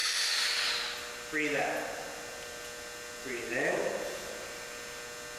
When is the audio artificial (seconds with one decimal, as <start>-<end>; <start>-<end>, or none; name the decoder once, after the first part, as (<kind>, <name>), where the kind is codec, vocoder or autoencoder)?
none